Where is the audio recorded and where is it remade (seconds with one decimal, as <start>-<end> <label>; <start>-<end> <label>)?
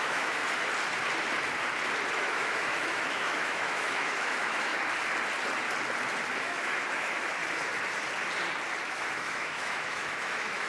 0.0-0.4 remade; 0.4-2.1 recorded; 2.1-4.7 remade; 4.7-6.4 recorded; 6.4-7.4 remade; 7.4-8.8 recorded; 8.8-10.7 remade